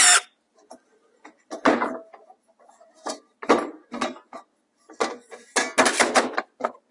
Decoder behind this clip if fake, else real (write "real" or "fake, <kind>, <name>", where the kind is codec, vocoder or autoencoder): real